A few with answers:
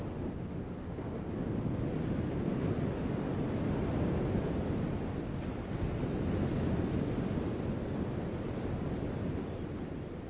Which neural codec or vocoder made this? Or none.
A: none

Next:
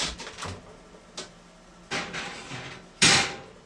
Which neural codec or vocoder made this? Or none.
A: none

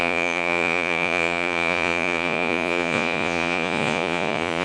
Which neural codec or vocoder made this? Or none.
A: vocoder, Vocos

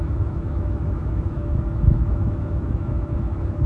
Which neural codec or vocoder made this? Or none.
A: autoencoder, DAC-VAE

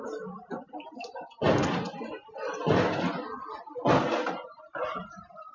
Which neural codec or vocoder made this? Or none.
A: none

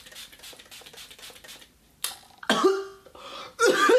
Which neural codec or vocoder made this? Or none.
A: none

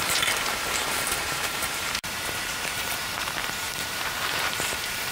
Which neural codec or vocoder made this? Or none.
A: vocoder, BigVGAN v2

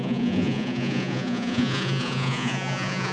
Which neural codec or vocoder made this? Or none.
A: vocoder, Vocos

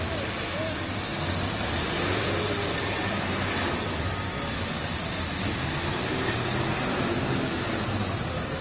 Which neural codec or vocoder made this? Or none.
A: none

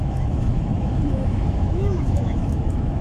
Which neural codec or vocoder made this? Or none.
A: autoencoder, DAC-VAE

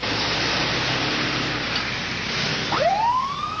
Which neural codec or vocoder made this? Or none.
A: none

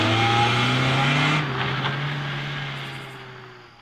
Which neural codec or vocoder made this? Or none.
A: none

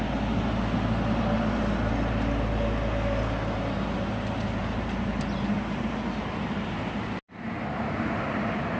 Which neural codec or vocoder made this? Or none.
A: none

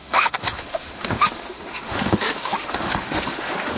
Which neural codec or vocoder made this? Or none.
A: autoencoder, DAC-VAE